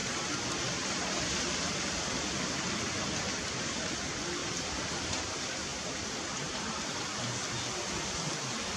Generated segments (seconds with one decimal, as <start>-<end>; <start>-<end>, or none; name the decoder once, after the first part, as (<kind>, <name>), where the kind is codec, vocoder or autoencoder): 4.4-5.3 (vocoder, BigVGAN v2); 5.7-7.0